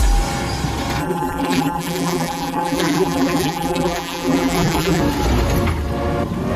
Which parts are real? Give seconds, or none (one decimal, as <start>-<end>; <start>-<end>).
0.0-1.0; 5.0-6.6